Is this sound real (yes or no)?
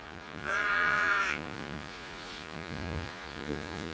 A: no